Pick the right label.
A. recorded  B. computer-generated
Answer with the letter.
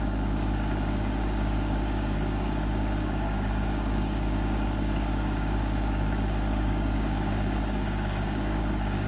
B